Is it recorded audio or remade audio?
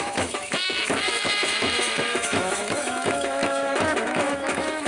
remade